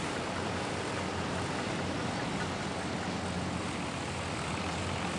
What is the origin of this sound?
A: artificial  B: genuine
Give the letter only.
B